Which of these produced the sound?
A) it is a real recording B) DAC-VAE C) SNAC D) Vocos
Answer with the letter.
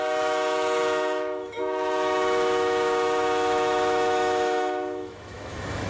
B